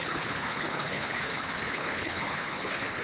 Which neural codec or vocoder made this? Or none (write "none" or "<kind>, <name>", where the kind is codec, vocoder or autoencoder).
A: codec, HILCodec